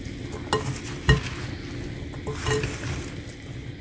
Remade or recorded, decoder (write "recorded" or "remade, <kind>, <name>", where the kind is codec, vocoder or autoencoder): recorded